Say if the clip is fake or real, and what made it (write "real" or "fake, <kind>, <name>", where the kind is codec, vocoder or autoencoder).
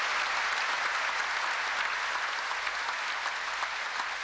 real